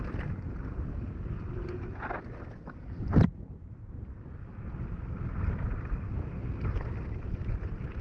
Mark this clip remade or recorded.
recorded